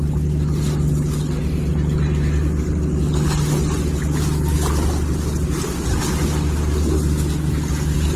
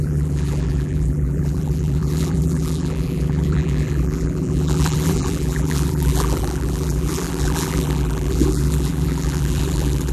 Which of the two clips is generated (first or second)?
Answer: second